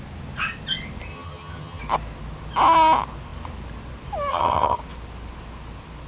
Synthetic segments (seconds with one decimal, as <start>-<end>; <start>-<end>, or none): 1.1-1.8; 4.3-4.8